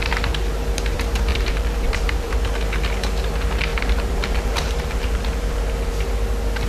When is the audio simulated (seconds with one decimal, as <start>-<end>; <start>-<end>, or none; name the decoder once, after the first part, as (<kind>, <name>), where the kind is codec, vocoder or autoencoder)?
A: 1.3-2.3 (vocoder, BigVGAN v2); 3.7-5.9